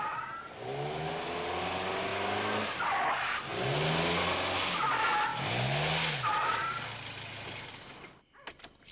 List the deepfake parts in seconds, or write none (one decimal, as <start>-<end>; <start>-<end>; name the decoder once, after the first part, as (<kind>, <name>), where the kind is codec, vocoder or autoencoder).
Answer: none